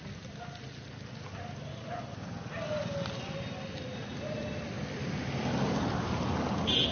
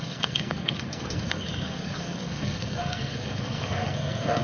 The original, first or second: first